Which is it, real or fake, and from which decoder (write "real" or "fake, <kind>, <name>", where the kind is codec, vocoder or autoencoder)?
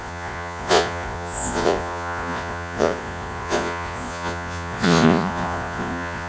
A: fake, vocoder, Vocos